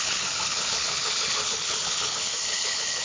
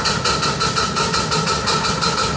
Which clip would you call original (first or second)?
second